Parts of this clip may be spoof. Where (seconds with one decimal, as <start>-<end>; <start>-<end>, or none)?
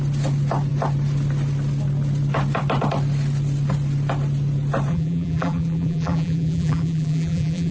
4.9-7.7